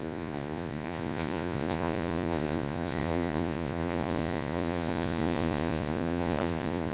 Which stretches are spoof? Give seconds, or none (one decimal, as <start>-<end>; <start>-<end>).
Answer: 0.0-6.9